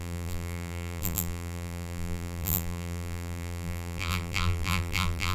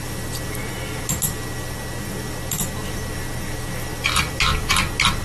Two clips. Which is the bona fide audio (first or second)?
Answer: second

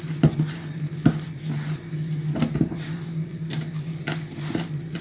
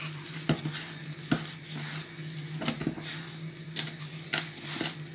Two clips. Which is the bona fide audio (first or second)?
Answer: second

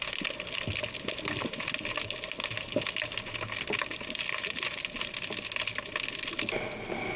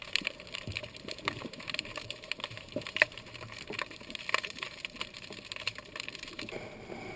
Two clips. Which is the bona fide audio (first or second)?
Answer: first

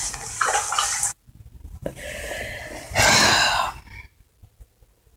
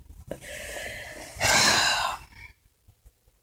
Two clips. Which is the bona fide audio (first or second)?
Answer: first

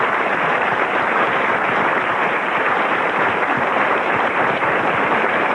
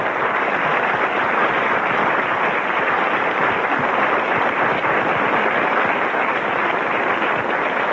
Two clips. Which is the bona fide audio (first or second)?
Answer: second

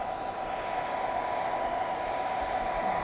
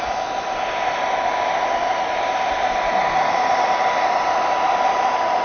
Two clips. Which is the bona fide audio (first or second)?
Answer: first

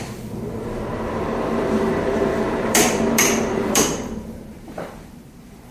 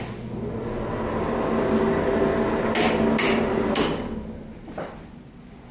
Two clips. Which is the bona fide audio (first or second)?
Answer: second